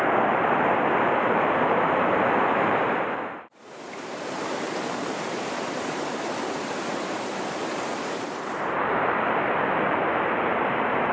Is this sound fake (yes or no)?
yes